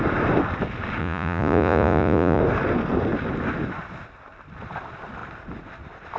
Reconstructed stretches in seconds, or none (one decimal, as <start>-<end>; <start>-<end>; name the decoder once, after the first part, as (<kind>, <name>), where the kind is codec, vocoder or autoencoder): 1.0-2.4 (vocoder, Vocos)